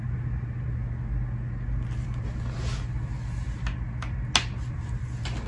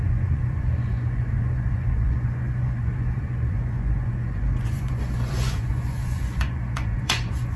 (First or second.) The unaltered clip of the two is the first